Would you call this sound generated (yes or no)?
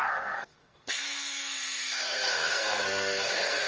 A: yes